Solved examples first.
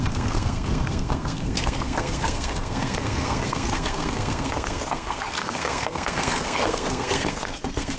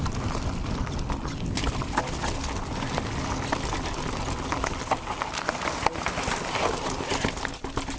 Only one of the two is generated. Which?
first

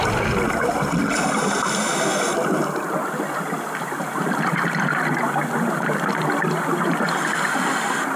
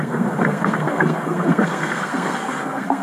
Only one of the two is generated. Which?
second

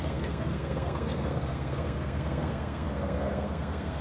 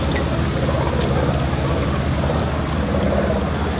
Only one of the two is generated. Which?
first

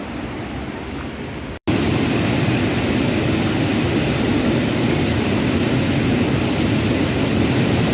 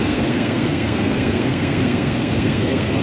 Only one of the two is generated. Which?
second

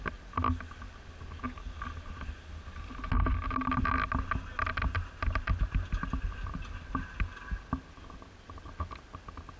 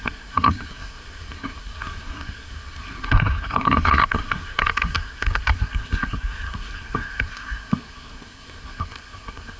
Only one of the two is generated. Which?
second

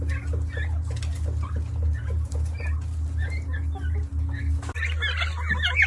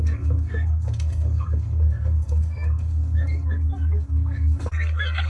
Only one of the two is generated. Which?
second